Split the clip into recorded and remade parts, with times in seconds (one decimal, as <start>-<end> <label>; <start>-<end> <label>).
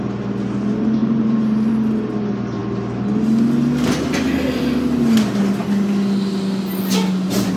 0.0-1.0 recorded; 1.0-1.7 remade; 1.7-7.6 recorded